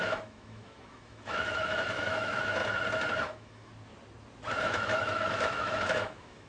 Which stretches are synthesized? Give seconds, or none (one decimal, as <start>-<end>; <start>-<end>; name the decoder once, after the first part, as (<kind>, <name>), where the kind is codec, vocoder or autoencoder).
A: 0.0-2.6 (autoencoder, DAC-VAE); 3.2-3.7; 4.6-6.5